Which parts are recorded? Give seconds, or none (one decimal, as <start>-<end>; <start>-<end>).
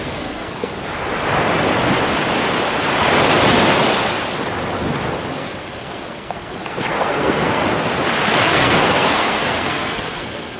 0.7-5.3; 7.6-8.4